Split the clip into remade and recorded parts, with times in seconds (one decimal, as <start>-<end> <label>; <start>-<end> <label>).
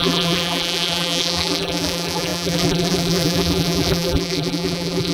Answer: 0.0-5.1 remade